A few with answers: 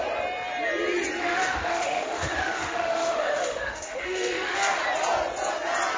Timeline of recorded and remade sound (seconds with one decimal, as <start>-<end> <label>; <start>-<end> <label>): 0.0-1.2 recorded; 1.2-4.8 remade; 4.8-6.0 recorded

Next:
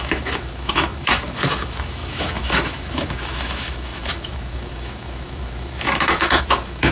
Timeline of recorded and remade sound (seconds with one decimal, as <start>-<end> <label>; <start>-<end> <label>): 0.0-6.9 remade

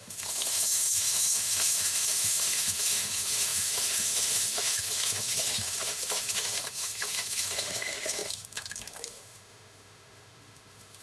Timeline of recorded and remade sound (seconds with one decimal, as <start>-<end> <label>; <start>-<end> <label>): 0.0-11.0 remade

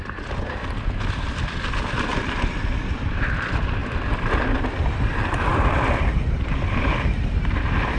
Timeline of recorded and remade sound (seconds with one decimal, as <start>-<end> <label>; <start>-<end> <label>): 0.0-8.0 recorded

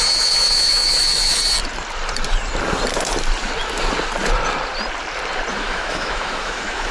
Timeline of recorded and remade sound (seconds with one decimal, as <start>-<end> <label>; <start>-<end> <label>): 0.0-1.4 remade; 1.4-5.5 recorded; 5.5-6.9 remade

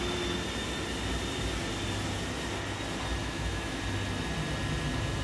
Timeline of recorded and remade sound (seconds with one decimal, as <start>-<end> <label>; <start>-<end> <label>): 0.0-3.2 recorded; 3.2-3.8 remade; 3.8-5.2 recorded

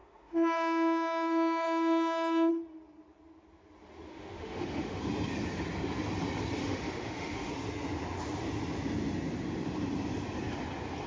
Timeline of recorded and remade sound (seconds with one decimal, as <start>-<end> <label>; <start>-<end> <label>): 0.0-2.5 remade; 2.5-4.1 recorded; 4.1-5.0 remade; 5.0-6.6 recorded; 6.6-7.5 remade; 7.5-11.1 recorded

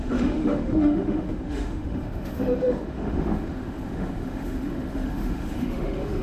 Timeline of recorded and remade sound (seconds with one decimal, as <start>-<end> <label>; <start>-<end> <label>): 0.0-6.2 remade